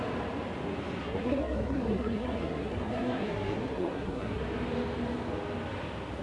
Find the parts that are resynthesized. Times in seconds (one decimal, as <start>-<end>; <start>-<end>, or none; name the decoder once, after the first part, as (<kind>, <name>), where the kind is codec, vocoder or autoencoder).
1.0-4.4 (codec, SNAC)